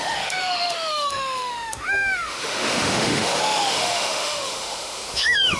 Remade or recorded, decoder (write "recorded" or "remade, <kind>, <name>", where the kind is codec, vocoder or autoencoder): remade, autoencoder, DAC-VAE